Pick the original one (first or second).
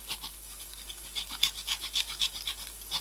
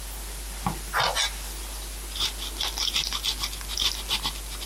second